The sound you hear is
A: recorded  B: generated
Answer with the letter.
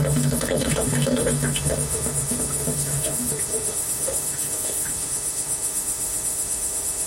B